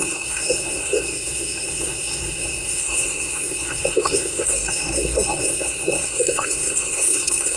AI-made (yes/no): yes